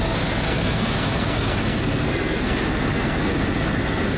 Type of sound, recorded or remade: remade